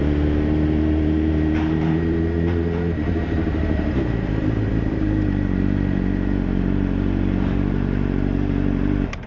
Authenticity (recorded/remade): remade